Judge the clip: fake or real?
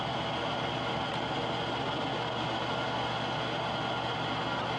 real